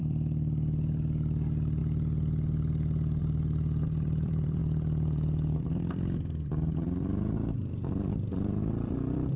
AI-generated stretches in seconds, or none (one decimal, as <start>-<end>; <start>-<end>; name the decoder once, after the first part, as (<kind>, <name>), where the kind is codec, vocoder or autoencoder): 0.0-1.8 (vocoder, BigVGAN v2); 3.2-9.4